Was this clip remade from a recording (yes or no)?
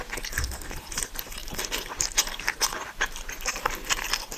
no